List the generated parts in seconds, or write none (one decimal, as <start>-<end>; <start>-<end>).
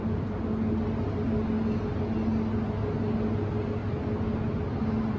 none